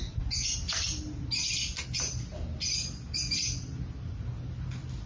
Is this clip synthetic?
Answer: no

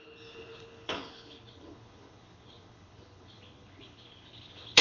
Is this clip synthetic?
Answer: yes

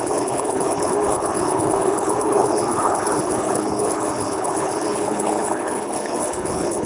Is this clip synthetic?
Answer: yes